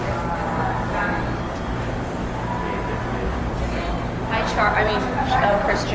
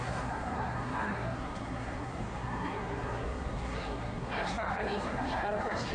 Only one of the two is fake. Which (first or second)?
second